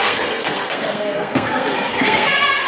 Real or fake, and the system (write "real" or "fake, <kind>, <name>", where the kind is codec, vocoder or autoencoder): fake, codec, SNAC